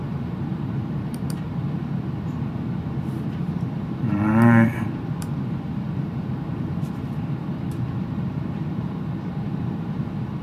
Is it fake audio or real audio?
fake